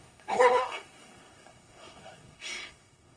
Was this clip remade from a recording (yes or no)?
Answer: yes